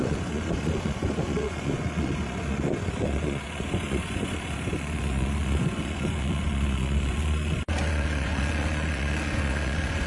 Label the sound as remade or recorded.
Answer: remade